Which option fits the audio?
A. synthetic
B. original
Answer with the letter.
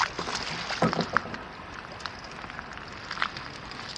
B